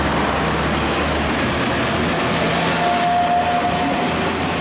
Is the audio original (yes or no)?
yes